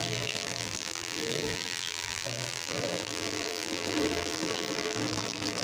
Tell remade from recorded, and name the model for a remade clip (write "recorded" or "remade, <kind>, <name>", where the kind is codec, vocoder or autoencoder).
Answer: remade, vocoder, BigVGAN v2